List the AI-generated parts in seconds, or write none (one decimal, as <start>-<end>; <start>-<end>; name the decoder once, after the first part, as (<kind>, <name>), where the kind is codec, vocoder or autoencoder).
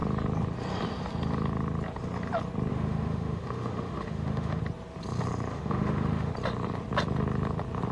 2.7-4.6 (autoencoder, DAC-VAE); 5.5-6.3